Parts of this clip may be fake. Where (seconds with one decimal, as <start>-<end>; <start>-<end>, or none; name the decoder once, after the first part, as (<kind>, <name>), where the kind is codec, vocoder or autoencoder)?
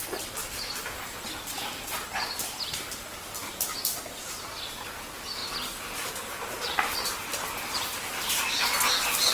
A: none